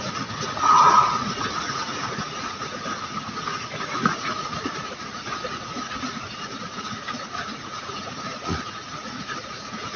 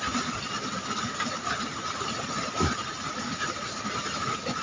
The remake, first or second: first